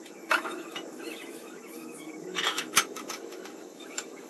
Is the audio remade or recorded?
remade